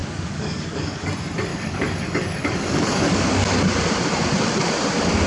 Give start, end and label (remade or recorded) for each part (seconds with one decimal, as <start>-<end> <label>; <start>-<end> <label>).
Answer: 0.0-1.1 remade; 1.1-1.5 recorded; 1.5-3.6 remade; 3.6-5.3 recorded